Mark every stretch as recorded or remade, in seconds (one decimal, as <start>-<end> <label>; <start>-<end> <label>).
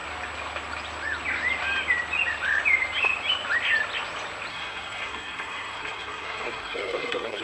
0.0-4.5 recorded; 4.5-7.4 remade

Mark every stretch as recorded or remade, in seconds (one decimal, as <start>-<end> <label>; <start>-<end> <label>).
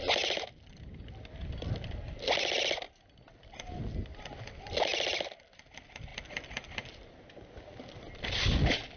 0.0-9.0 recorded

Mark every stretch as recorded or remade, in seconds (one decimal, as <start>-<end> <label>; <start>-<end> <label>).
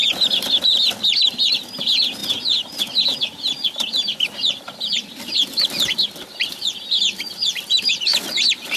0.0-1.2 recorded; 1.2-8.8 remade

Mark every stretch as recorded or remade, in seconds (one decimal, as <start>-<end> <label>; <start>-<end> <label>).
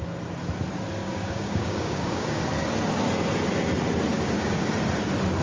0.0-1.0 recorded; 1.0-2.4 remade; 2.4-4.1 recorded; 4.1-4.7 remade; 4.7-5.4 recorded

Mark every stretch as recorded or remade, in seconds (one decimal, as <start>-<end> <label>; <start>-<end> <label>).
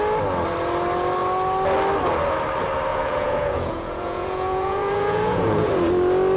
0.0-2.9 recorded; 2.9-5.7 remade; 5.7-6.4 recorded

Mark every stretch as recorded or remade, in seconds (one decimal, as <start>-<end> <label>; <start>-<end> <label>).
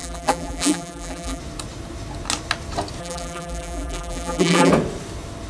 0.0-1.4 remade; 1.4-3.0 recorded; 3.0-4.7 remade; 4.7-5.5 recorded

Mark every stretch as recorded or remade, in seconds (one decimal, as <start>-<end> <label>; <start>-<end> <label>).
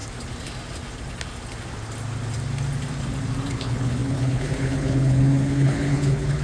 0.0-3.5 recorded; 3.5-6.4 remade